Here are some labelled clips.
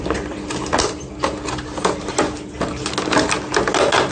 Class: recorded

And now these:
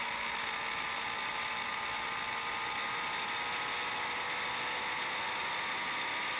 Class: recorded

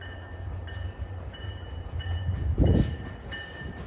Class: remade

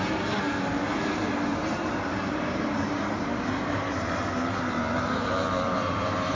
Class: remade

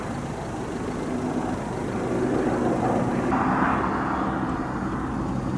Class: recorded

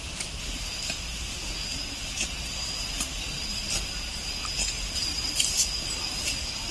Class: recorded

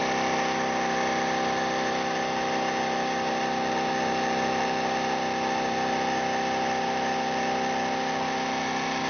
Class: recorded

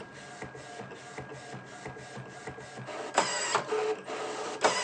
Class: recorded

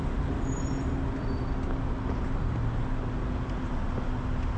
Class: recorded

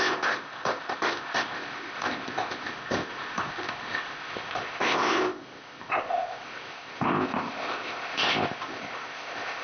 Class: remade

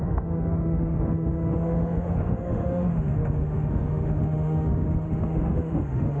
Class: remade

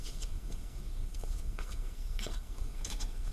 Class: remade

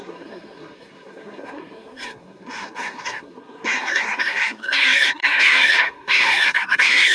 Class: remade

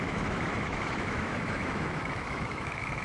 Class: remade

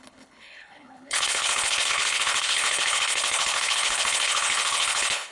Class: remade